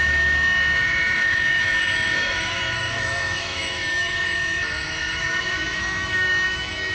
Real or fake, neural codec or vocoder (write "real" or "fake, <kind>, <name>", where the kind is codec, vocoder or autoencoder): fake, autoencoder, DAC-VAE